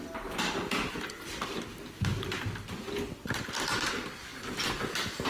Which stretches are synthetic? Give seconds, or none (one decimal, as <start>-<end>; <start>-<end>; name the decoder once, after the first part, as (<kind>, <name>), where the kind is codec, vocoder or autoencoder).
none